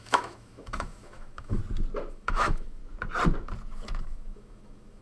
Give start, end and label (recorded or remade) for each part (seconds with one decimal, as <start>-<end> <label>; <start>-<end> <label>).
0.0-1.6 remade; 1.6-2.1 recorded; 2.1-2.8 remade; 2.8-4.0 recorded; 4.0-5.0 remade